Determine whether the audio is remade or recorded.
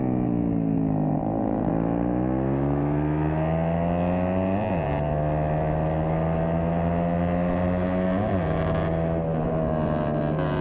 recorded